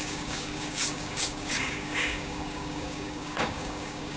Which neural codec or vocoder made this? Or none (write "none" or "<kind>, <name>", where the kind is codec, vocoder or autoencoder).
codec, DAC